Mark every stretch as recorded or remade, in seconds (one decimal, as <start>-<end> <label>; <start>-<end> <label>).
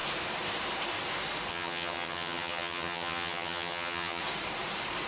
0.0-1.5 recorded; 1.5-4.2 remade; 4.2-5.1 recorded